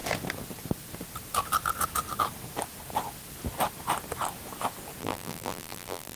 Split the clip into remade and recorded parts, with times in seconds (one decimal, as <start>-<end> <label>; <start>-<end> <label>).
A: 0.0-5.0 recorded; 5.0-6.2 remade